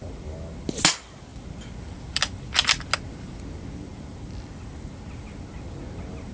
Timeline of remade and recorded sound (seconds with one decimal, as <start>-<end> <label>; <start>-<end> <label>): 0.0-6.3 recorded

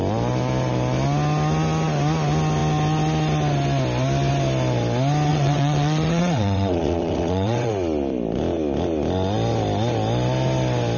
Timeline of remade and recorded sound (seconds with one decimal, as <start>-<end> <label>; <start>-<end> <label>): 0.0-5.3 recorded; 5.3-7.7 remade; 7.7-11.0 recorded

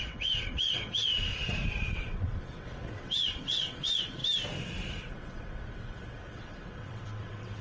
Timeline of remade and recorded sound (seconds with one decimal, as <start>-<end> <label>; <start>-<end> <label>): 0.0-1.3 remade; 1.3-1.8 recorded; 1.8-4.2 remade; 4.2-4.9 recorded; 4.9-7.6 remade

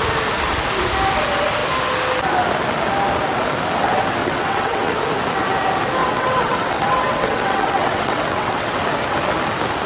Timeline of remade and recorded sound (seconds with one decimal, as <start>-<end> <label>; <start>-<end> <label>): 0.0-4.2 recorded; 4.2-5.0 remade; 5.0-6.0 recorded; 6.0-8.8 remade; 8.8-9.9 recorded

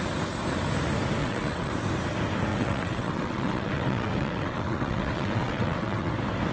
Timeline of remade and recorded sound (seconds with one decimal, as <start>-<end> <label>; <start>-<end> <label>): 0.0-1.2 recorded; 1.2-1.7 remade; 1.7-2.5 recorded; 2.5-6.1 remade; 6.1-6.5 recorded

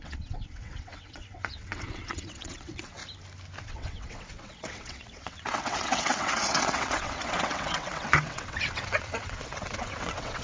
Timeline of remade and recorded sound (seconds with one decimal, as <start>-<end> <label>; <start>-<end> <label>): 0.0-3.0 remade; 3.0-3.6 recorded; 3.6-10.4 remade

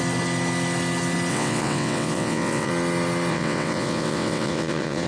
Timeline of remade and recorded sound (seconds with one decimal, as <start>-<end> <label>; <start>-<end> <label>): 0.0-1.3 recorded; 1.3-2.7 remade; 2.7-3.3 recorded; 3.3-5.1 remade